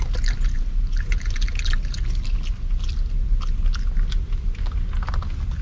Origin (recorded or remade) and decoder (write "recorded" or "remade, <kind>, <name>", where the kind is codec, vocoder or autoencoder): recorded